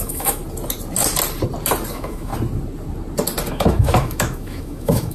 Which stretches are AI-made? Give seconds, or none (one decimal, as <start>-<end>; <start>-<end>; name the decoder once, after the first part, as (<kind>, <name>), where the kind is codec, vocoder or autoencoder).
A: 0.0-0.4 (autoencoder, DAC-VAE); 1.9-2.3; 3.5-5.1